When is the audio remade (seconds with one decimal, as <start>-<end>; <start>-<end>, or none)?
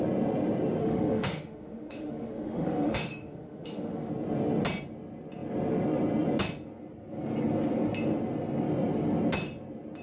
0.8-4.1